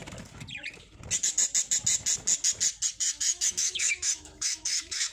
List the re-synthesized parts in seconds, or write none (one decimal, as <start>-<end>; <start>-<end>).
3.1-5.1

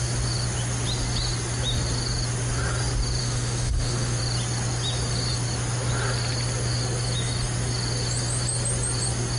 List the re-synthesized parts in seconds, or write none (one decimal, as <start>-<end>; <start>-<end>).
3.2-4.2

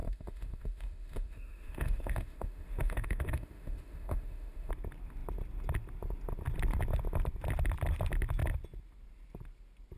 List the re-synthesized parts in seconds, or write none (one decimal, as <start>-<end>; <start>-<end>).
0.0-4.7

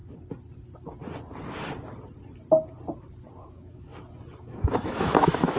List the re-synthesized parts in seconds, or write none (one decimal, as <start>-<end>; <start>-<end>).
3.4-3.9; 4.4-5.6

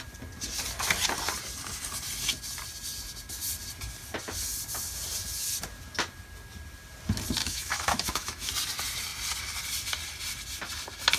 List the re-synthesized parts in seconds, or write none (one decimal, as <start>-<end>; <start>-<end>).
7.4-8.5

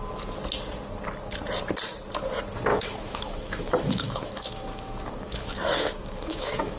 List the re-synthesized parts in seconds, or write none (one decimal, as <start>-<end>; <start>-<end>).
2.7-6.8

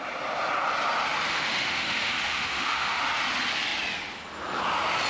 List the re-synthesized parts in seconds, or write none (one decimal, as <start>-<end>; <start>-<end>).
1.3-3.0